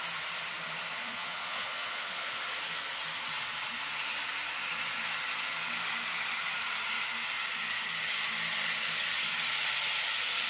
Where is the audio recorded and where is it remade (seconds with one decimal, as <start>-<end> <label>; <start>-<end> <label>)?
0.0-0.9 recorded; 0.9-2.3 remade; 2.3-10.5 recorded